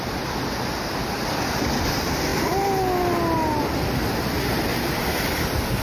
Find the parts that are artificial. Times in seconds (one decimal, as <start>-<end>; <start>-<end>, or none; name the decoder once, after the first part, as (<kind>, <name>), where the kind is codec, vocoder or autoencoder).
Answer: 4.7-5.2 (vocoder, BigVGAN v2)